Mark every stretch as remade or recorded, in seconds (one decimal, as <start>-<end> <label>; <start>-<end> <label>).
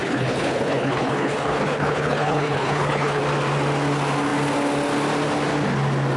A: 0.0-3.2 remade; 3.2-6.2 recorded